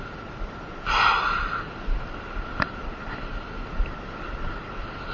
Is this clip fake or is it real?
real